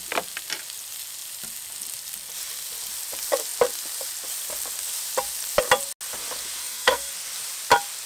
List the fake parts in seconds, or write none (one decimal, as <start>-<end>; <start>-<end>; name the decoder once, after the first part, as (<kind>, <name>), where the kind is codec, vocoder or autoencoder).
6.6-7.1 (codec, SNAC)